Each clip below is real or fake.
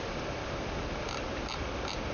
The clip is real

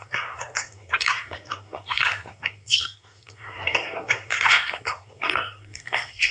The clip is fake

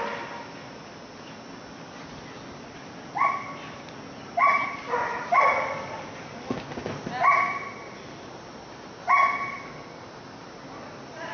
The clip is real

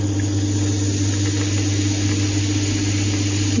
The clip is real